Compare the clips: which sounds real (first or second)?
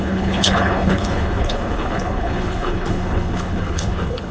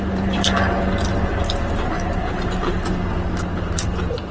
second